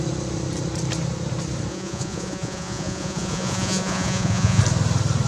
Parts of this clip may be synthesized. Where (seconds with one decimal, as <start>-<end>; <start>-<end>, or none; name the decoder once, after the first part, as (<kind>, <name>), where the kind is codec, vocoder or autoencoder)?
1.7-4.6 (vocoder, Vocos)